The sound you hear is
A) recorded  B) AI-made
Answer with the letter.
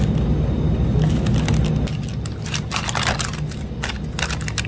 A